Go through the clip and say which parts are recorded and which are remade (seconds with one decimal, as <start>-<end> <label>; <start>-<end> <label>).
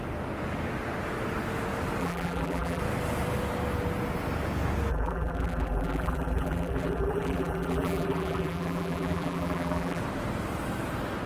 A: 0.0-2.0 recorded; 2.0-2.8 remade; 2.8-4.9 recorded; 4.9-10.0 remade; 10.0-11.3 recorded